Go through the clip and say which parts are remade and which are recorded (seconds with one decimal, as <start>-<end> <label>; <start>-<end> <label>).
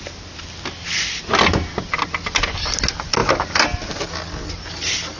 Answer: 0.0-5.2 recorded